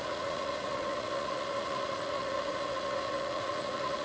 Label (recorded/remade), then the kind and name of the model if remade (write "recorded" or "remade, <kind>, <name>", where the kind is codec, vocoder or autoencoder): remade, vocoder, Vocos